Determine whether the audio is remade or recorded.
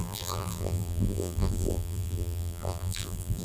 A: remade